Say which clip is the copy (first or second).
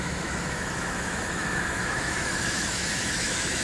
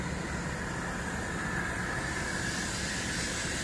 first